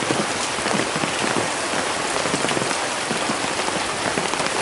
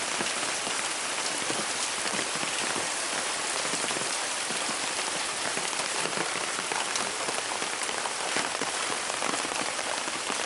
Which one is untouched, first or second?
first